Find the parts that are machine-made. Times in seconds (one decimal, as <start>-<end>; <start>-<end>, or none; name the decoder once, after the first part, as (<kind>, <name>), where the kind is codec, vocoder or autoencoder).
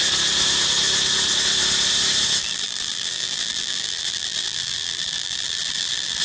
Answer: 2.4-6.2 (vocoder, BigVGAN v2)